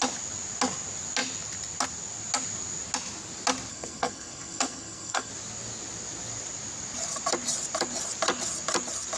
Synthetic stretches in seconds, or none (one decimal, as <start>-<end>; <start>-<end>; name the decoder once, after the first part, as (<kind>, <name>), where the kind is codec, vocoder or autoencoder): 3.7-5.3 (codec, SNAC)